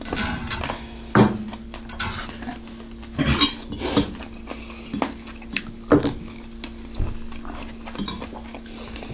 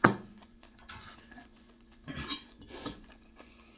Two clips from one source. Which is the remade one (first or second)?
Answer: second